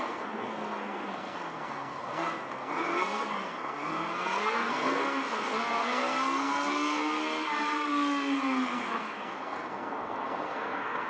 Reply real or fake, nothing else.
fake